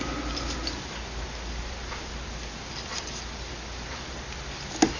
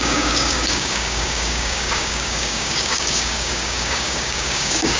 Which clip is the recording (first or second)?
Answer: first